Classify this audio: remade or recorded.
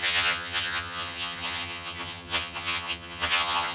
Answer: remade